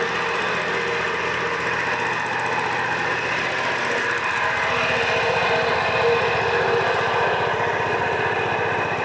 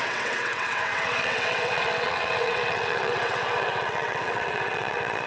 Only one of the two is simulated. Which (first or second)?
second